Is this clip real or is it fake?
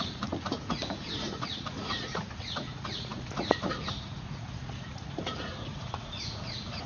fake